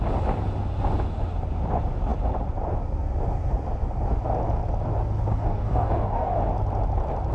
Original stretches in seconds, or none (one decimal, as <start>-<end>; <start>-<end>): 0.0-5.3; 6.4-7.3